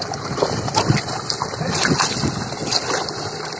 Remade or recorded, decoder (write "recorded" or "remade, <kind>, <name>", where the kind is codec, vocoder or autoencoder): recorded